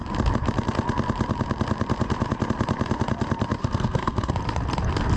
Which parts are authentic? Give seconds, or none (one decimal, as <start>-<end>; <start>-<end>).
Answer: 0.0-3.6; 4.3-5.2